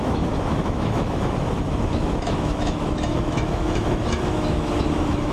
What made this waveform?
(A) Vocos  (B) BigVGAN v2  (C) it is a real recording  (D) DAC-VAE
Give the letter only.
D